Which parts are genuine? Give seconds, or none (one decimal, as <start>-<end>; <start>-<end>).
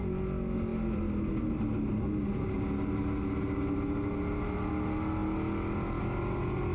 0.0-6.7